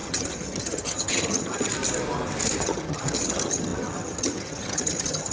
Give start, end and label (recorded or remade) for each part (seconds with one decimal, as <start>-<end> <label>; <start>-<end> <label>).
0.0-1.7 remade; 1.7-2.6 recorded; 2.6-5.3 remade